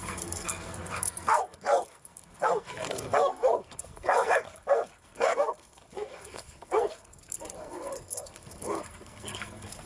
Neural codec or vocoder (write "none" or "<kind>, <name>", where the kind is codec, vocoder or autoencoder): codec, SNAC